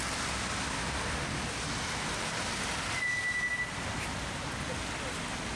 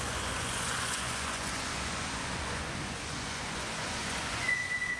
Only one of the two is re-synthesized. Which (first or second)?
second